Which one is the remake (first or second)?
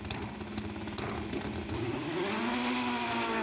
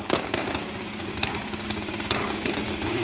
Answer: second